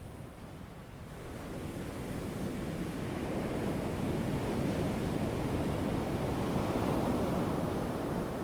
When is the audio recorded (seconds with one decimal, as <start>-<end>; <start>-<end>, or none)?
0.0-8.4